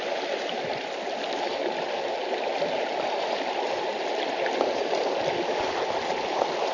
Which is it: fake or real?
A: real